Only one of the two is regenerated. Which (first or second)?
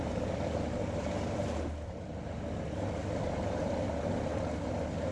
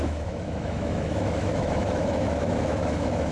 second